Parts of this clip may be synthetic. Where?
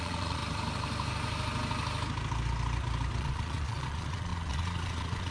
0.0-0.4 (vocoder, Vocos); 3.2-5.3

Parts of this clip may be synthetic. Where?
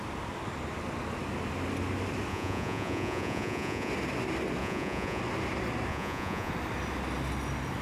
2.3-3.9 (vocoder, Vocos); 4.6-5.2; 5.9-6.5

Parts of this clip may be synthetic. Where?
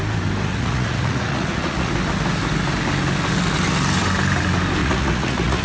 0.5-1.9 (vocoder, Vocos); 4.8-5.6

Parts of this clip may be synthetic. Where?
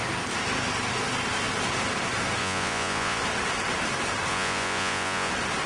2.4-3.2 (vocoder, Vocos); 4.3-5.3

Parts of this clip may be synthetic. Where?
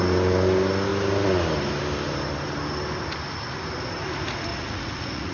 4.5-5.3 (vocoder, Vocos)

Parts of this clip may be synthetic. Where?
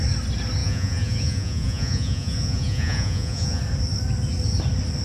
0.6-3.6 (vocoder, Vocos)